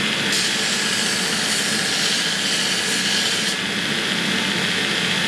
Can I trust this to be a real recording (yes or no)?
yes